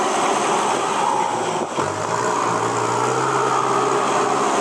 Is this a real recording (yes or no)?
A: yes